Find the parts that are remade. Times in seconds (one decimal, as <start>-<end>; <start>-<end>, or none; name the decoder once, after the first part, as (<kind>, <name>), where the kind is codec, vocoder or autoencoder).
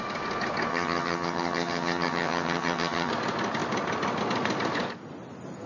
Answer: 0.7-3.1 (vocoder, HiFi-GAN)